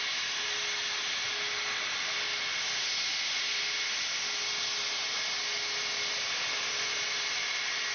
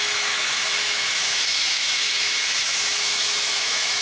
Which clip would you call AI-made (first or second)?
second